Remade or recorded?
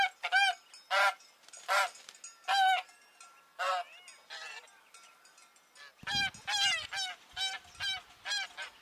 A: recorded